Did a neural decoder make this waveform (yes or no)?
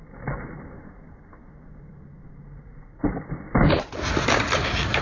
no